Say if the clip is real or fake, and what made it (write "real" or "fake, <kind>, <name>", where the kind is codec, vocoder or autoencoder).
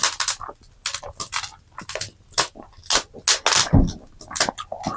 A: real